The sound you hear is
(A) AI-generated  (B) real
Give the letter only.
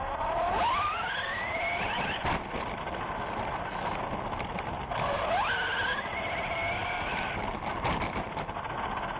B